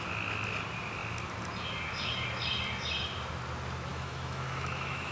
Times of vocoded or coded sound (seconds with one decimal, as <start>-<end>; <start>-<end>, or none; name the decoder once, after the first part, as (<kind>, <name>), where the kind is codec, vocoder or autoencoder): 3.9-5.1 (autoencoder, DAC-VAE)

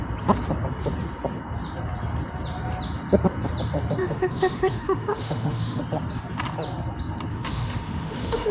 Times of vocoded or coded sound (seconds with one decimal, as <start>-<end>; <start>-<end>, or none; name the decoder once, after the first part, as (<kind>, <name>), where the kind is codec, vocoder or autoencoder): 4.0-5.8 (autoencoder, DAC-VAE); 7.3-8.5

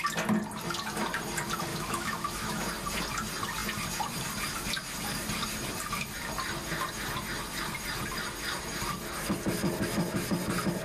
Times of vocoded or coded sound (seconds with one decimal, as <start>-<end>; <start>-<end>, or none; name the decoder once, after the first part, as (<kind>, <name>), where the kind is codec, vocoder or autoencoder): 1.7-2.6 (autoencoder, DAC-VAE)

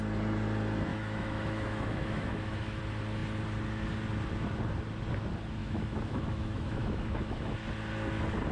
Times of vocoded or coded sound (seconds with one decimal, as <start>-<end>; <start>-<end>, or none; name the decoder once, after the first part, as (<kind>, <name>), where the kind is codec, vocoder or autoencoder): 0.9-2.8 (autoencoder, DAC-VAE); 5.6-7.6